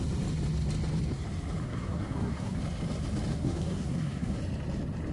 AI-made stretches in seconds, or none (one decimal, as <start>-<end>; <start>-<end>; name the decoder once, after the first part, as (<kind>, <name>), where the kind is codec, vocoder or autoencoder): 1.6-2.6 (codec, SNAC); 3.3-4.4